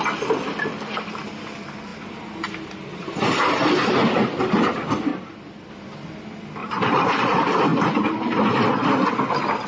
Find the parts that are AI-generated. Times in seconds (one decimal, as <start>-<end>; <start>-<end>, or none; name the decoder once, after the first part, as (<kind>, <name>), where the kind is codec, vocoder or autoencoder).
5.1-5.7 (vocoder, BigVGAN v2); 6.6-7.2